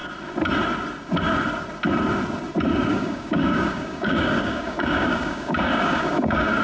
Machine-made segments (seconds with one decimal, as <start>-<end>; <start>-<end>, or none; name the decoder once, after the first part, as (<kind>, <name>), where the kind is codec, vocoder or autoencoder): 2.9-6.6 (codec, DAC)